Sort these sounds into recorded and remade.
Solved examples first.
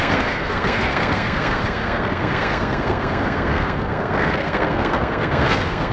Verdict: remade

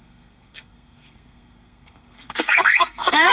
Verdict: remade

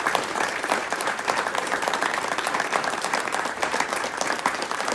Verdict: remade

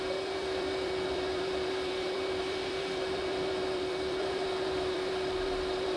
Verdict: remade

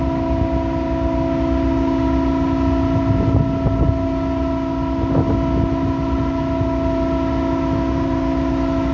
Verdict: recorded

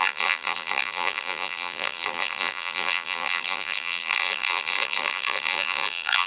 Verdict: remade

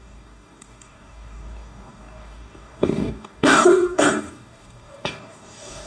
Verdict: remade